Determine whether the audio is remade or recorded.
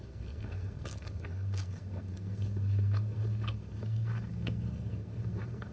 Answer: remade